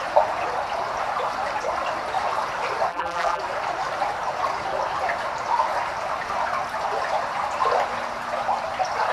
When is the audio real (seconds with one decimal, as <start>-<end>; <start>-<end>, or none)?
0.0-2.9; 3.4-9.1